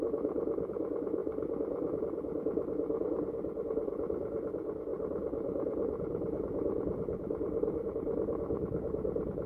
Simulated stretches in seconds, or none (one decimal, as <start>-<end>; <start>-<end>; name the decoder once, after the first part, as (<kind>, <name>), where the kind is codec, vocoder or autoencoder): 4.9-9.5 (vocoder, BigVGAN v2)